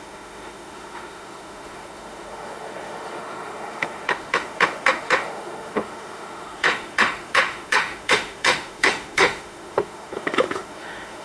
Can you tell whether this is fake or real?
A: fake